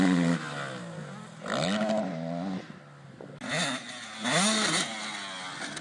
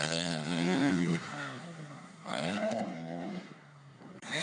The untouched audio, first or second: first